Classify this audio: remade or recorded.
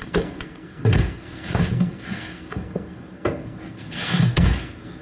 remade